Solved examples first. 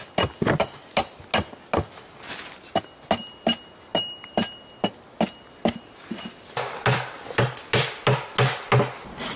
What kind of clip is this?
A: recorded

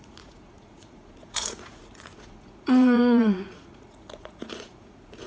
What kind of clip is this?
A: remade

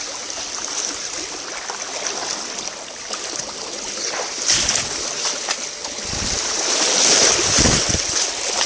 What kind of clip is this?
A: recorded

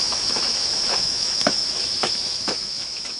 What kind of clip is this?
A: remade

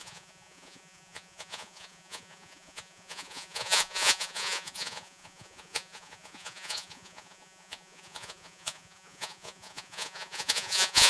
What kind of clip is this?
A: remade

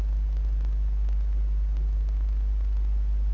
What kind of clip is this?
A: recorded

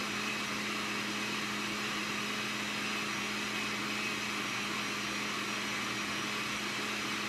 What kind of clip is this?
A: recorded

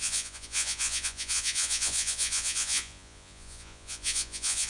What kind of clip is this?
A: remade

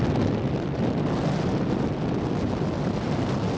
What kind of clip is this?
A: recorded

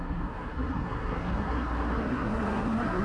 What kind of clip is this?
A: remade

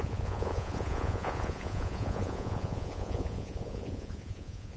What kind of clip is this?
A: remade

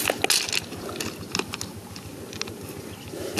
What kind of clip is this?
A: recorded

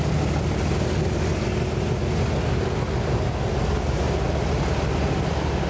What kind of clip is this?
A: recorded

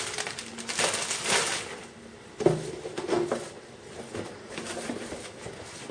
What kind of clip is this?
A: recorded